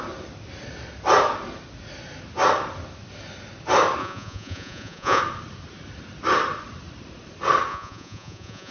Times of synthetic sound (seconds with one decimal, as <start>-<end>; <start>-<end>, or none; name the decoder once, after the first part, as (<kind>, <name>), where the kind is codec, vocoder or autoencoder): 4.0-5.2 (vocoder, Vocos); 7.7-8.7